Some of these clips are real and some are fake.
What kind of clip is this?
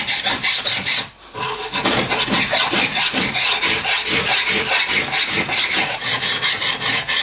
fake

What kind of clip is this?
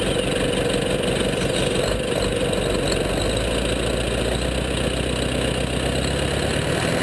real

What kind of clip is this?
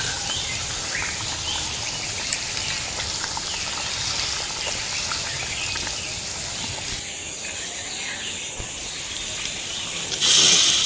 real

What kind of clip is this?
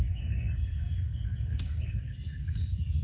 fake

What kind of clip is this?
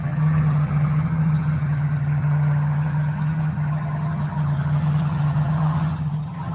fake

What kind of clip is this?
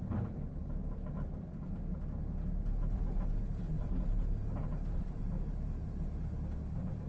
real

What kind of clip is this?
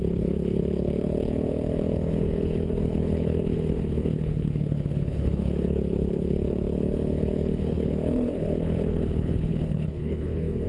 fake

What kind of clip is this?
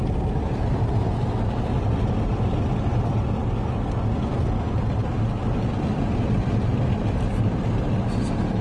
real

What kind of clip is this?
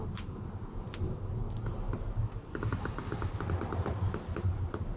real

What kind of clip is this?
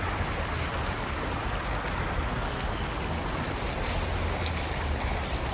real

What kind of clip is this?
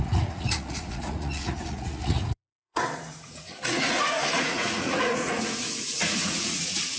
fake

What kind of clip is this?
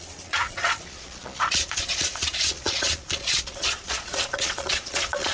fake